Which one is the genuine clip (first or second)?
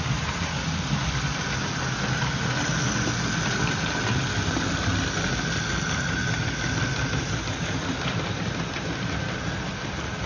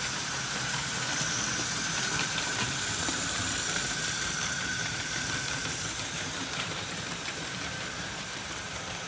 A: first